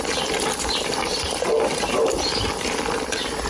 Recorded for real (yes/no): no